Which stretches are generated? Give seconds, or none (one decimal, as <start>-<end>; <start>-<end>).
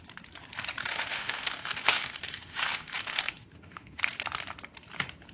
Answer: 0.8-4.0